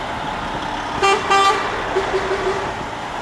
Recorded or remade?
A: recorded